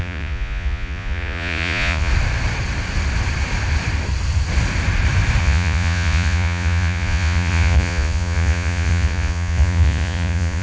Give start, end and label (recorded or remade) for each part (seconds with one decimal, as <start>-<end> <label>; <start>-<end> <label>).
0.0-2.1 remade; 2.1-5.4 recorded; 5.4-10.6 remade